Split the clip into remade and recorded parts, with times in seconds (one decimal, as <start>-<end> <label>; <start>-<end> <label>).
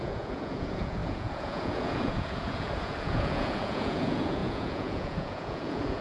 0.0-6.0 remade